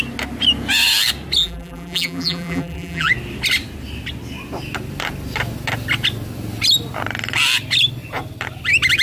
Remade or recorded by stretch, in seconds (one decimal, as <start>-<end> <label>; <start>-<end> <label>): 0.0-1.4 recorded; 1.4-3.1 remade; 3.1-9.0 recorded